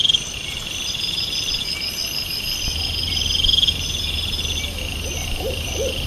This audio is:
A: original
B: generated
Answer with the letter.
B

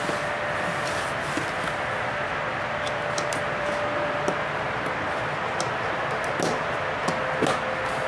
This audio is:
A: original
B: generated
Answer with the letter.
A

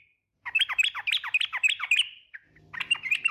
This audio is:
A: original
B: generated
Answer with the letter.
B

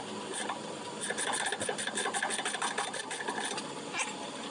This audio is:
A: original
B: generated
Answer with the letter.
A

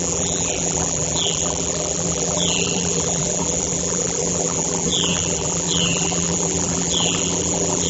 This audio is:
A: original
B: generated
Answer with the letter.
B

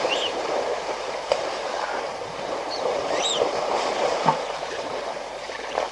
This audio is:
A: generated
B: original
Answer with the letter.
A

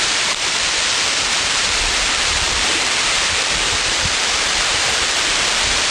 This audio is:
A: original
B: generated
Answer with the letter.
B